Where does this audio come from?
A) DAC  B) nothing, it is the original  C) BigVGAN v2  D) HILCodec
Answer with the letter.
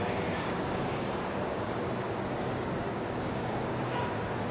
A